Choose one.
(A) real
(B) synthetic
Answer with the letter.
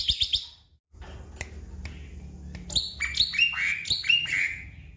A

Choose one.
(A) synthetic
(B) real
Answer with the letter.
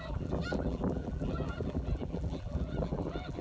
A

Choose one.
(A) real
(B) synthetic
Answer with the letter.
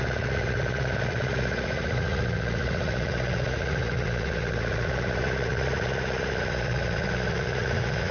B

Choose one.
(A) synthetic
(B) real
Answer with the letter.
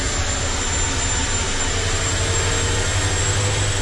B